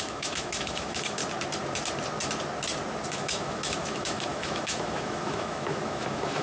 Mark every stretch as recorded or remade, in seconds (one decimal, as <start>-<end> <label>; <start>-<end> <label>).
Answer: 0.0-1.2 remade; 1.2-3.1 recorded; 3.1-6.4 remade